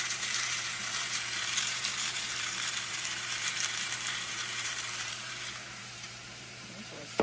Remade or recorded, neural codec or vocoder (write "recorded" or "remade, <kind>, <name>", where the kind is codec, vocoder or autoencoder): remade, vocoder, BigVGAN v2